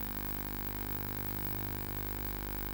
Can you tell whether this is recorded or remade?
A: remade